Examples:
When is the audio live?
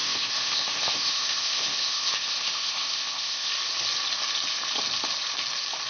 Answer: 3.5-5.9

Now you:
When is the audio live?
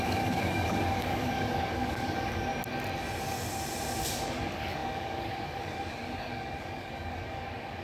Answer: 2.5-4.0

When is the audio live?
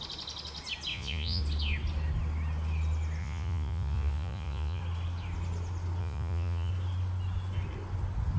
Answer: 0.0-0.9; 1.4-3.2; 4.8-6.0; 6.7-8.4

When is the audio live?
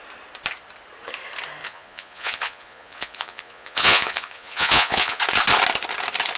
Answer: 0.0-1.6; 5.2-6.4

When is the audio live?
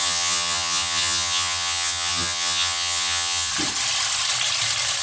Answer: 3.5-5.0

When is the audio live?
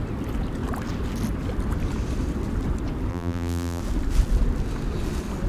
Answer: 0.0-3.1; 3.8-5.5